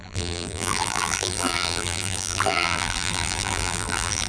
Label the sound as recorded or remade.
remade